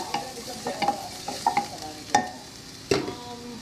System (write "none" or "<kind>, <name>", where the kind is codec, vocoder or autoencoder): none